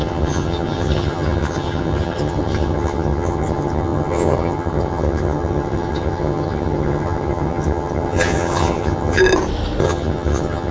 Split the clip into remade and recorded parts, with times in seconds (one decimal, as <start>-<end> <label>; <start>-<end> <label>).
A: 0.0-9.2 remade; 9.2-9.8 recorded; 9.8-10.7 remade